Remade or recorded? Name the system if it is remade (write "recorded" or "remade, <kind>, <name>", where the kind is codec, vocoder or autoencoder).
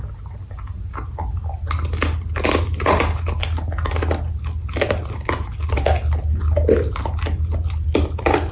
recorded